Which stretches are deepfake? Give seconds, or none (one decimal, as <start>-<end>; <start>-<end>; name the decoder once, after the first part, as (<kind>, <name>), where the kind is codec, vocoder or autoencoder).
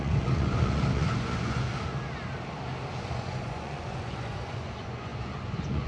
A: 0.0-1.7 (vocoder, Vocos); 3.2-5.9